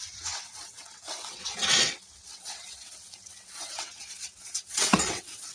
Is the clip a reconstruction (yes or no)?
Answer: yes